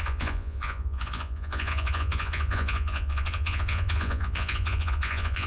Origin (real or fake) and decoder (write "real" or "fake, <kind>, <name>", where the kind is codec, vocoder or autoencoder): fake, vocoder, Vocos